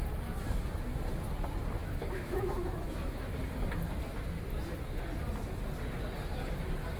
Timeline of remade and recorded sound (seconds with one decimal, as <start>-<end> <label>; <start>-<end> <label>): 0.0-1.8 recorded; 1.8-3.3 remade; 3.3-7.0 recorded